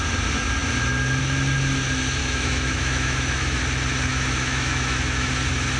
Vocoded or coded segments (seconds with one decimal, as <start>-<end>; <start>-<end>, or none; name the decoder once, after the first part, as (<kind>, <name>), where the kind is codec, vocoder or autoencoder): 2.2-3.6 (autoencoder, DAC-VAE); 4.1-5.3